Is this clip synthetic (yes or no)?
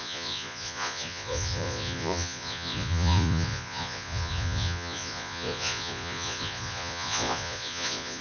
yes